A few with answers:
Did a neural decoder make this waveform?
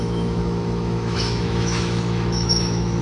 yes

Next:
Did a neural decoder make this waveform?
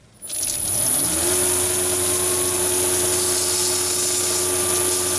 no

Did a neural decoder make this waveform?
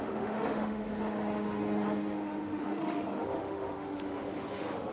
yes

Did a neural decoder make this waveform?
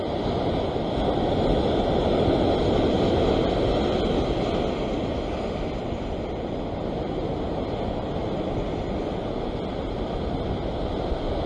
no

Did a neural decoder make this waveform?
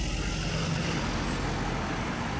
no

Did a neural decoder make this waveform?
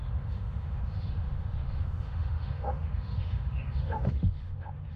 yes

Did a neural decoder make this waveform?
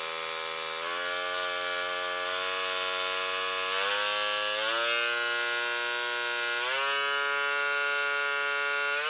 no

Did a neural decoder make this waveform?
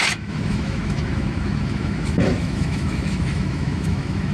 yes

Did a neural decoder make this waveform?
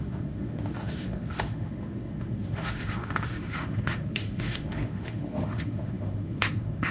yes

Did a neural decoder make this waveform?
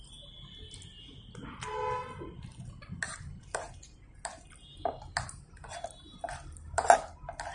no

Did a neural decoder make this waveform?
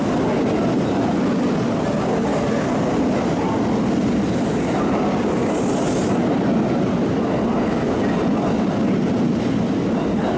no